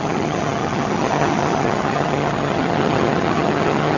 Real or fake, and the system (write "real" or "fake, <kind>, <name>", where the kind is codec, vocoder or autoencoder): fake, vocoder, HiFi-GAN